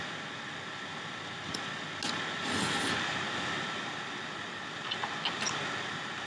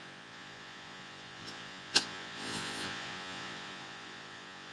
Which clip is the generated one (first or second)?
second